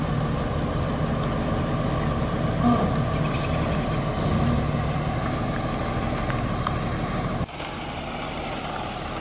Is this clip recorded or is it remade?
recorded